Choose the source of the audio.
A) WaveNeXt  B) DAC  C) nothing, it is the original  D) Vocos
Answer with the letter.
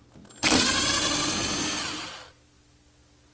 C